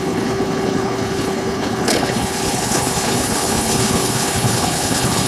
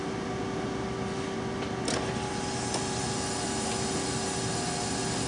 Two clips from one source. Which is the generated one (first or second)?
first